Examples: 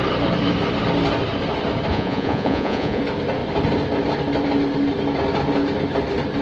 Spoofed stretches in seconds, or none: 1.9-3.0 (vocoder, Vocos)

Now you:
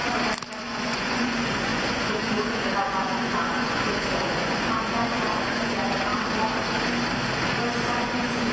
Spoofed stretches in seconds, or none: 0.6-6.1 (vocoder, Vocos); 7.9-8.5